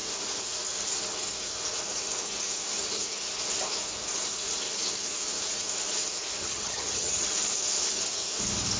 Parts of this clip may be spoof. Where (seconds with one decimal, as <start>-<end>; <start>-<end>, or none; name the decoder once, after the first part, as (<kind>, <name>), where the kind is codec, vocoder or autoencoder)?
6.4-7.3 (vocoder, HiFi-GAN)